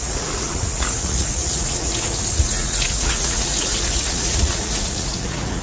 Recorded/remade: remade